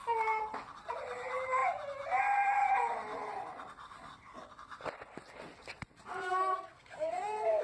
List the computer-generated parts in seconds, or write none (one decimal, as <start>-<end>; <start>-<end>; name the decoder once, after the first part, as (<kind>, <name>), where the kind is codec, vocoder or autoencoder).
6.7-7.6 (codec, SNAC)